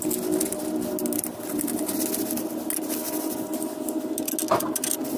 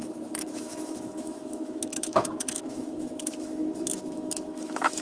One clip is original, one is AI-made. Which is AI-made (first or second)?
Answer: second